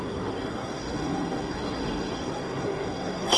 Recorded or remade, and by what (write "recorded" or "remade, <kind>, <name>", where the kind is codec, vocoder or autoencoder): remade, codec, SNAC